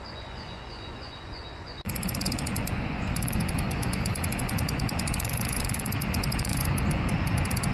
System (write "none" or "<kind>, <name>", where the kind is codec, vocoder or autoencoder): vocoder, Vocos